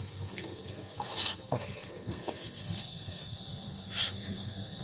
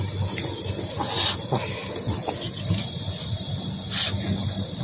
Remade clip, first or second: first